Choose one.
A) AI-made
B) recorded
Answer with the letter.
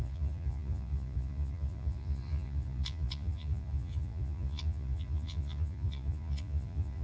A